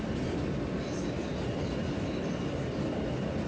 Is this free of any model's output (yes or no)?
yes